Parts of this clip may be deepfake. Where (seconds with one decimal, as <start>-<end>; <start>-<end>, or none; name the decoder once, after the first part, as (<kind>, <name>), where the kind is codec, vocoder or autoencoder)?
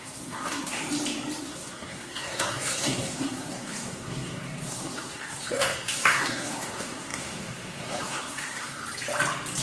0.0-0.8 (codec, SNAC); 1.4-8.8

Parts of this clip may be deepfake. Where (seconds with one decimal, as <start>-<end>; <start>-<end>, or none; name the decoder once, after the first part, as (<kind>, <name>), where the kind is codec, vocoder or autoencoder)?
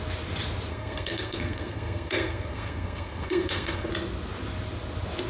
0.7-3.9 (codec, SNAC)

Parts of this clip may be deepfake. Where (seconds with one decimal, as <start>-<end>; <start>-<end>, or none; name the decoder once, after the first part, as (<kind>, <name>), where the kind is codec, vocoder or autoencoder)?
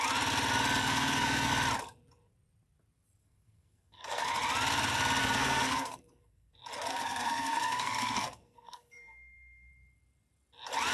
0.8-1.5 (codec, SNAC); 3.2-4.2; 5.2-6.5; 6.9-9.7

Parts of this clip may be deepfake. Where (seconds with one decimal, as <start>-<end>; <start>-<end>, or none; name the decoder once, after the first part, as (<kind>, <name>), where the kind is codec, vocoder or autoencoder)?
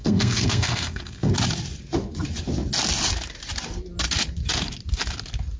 0.0-1.3 (codec, SNAC)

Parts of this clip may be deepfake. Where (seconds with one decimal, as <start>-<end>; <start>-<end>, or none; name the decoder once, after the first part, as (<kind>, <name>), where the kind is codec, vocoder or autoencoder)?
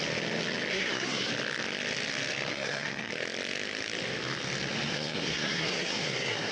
0.7-1.3 (codec, SNAC); 2.5-3.1; 4.9-6.5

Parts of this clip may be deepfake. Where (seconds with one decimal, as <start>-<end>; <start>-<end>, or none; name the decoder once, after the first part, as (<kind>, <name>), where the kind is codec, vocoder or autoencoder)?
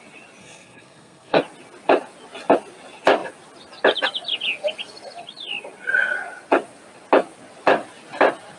0.4-1.4 (codec, SNAC)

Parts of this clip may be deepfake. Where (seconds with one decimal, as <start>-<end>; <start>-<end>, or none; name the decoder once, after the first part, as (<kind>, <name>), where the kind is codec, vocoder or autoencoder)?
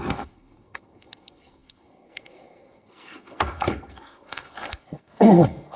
0.0-5.8 (codec, SNAC)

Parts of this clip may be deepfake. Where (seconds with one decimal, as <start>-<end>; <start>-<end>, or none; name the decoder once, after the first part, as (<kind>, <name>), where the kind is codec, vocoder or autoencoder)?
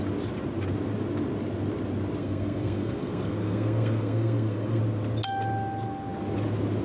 2.2-4.8 (codec, SNAC)